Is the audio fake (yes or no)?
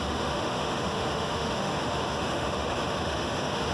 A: yes